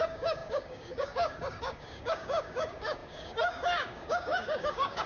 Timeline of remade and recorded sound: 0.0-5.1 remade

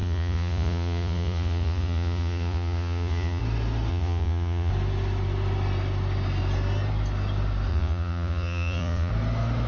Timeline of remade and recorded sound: 0.0-3.4 remade; 3.4-3.9 recorded; 3.9-4.7 remade; 4.7-7.7 recorded; 7.7-9.1 remade; 9.1-9.7 recorded

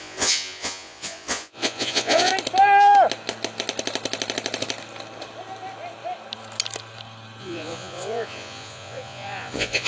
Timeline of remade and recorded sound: 0.0-2.3 remade; 2.3-7.4 recorded; 7.4-9.9 remade

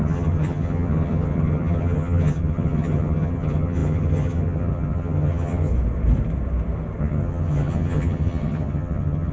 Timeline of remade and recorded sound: 0.0-5.7 remade; 5.7-7.0 recorded; 7.0-9.3 remade

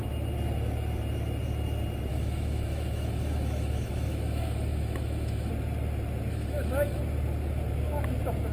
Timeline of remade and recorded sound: 0.0-2.1 recorded; 2.1-5.5 remade; 5.5-6.3 recorded; 6.3-7.0 remade; 7.0-8.5 recorded

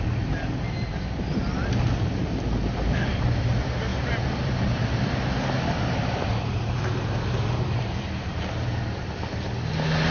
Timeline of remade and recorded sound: 0.0-3.9 recorded; 3.9-8.4 remade; 8.4-10.1 recorded

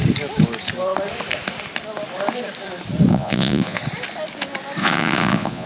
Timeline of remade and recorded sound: 0.0-3.1 recorded; 3.1-3.8 remade; 3.8-4.8 recorded; 4.8-5.7 remade

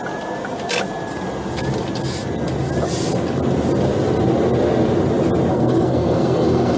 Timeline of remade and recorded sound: 0.0-5.5 recorded; 5.5-6.8 remade